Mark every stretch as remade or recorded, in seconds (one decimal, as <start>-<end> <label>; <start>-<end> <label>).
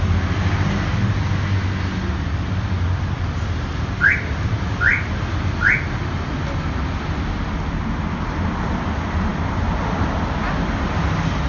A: 0.0-11.5 recorded